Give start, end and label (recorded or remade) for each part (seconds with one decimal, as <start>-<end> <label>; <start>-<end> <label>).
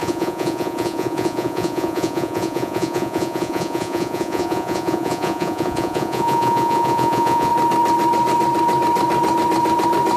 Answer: 0.0-7.5 remade; 7.5-10.2 recorded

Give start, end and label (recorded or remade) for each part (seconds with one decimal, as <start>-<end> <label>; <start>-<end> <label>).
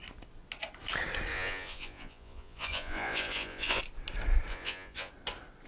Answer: 0.0-1.3 recorded; 1.3-3.8 remade; 3.8-4.5 recorded; 4.5-5.1 remade; 5.1-5.7 recorded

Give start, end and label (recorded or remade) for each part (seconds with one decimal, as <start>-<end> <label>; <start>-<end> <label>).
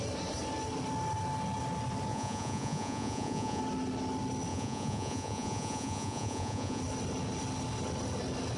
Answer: 0.0-2.1 recorded; 2.1-3.6 remade; 3.6-4.5 recorded; 4.5-6.8 remade; 6.8-8.6 recorded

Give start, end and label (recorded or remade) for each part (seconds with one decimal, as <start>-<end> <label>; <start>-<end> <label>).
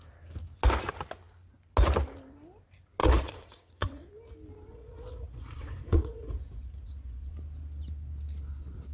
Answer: 0.0-3.0 recorded; 3.0-4.1 remade; 4.1-4.7 recorded; 4.7-7.3 remade; 7.3-8.9 recorded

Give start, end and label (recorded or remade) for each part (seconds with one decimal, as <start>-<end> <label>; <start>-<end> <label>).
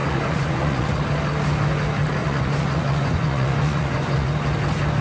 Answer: 0.0-1.0 remade; 1.0-2.2 recorded; 2.2-4.3 remade; 4.3-5.0 recorded